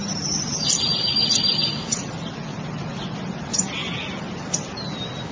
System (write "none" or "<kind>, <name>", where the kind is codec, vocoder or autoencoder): none